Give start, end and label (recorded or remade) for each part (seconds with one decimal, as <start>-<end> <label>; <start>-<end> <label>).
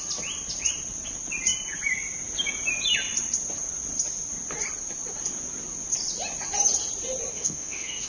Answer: 0.0-7.3 recorded; 7.3-8.1 remade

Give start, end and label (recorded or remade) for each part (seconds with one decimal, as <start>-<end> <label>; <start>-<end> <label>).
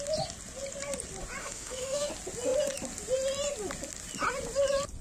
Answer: 0.0-1.4 recorded; 1.4-2.1 remade; 2.1-5.0 recorded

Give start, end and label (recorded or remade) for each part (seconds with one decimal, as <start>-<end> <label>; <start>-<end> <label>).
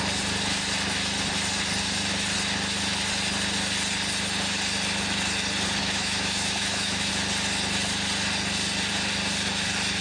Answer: 0.0-5.8 recorded; 5.8-7.1 remade; 7.1-10.0 recorded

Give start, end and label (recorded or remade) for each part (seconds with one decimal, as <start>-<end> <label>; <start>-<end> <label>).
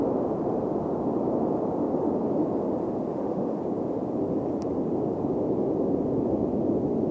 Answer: 0.0-3.1 recorded; 3.1-3.6 remade; 3.6-7.1 recorded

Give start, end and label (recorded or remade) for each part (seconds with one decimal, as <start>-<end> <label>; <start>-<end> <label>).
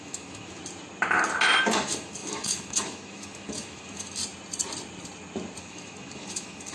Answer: 0.0-0.6 remade; 0.6-1.6 recorded; 1.6-4.2 remade; 4.2-5.6 recorded; 5.6-6.7 remade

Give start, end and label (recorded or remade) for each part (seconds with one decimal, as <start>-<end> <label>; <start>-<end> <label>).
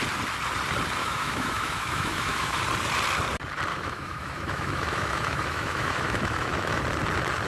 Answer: 0.0-1.0 recorded; 1.0-2.6 remade; 2.6-3.7 recorded; 3.7-6.8 remade; 6.8-7.5 recorded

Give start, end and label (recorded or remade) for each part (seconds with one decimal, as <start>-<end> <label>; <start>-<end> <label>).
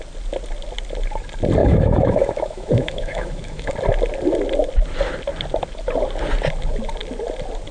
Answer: 0.0-1.6 recorded; 1.6-3.7 remade; 3.7-7.7 recorded